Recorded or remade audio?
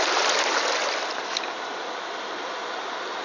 recorded